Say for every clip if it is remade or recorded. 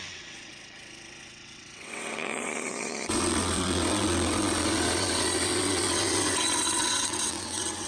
remade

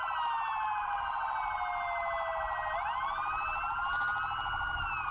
recorded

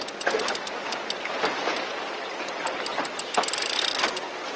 recorded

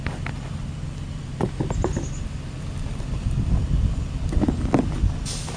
recorded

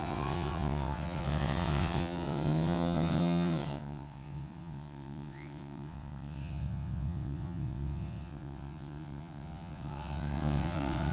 remade